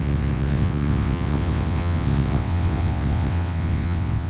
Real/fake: fake